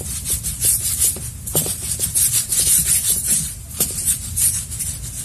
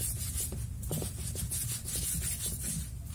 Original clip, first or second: second